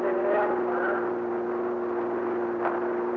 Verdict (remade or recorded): recorded